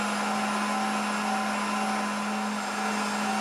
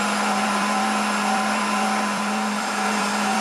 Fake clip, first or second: second